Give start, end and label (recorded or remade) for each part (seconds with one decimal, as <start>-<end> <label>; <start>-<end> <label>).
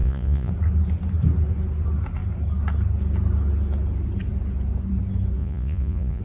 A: 0.0-0.5 remade; 0.5-5.4 recorded; 5.4-6.2 remade